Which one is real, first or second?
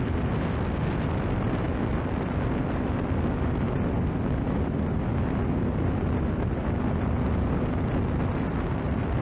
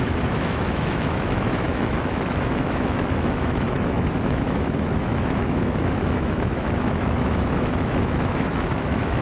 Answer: first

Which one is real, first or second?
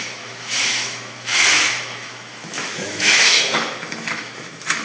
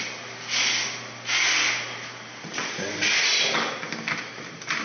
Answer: second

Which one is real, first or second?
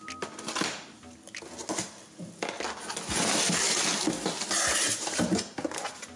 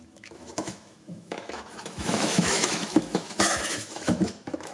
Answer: first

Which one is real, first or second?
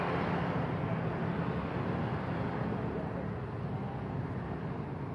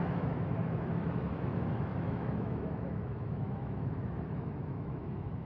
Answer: first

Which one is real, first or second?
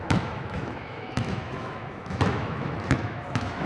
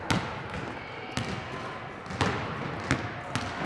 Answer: second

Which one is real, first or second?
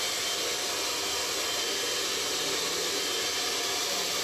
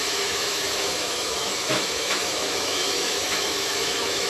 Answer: first